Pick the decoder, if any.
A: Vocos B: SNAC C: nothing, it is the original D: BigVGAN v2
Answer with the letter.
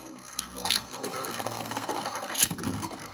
B